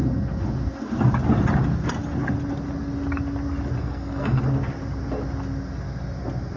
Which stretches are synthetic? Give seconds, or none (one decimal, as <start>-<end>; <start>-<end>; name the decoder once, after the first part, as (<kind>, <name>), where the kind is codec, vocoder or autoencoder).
3.8-4.4 (codec, SNAC)